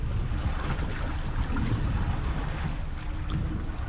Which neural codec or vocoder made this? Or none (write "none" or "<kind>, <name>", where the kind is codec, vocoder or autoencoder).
none